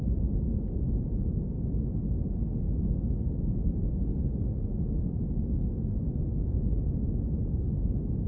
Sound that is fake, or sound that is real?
real